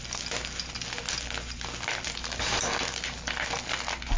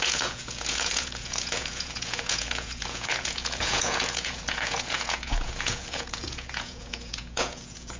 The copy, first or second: second